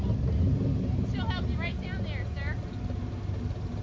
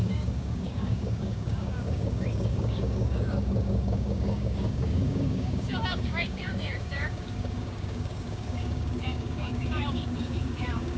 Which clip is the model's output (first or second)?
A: second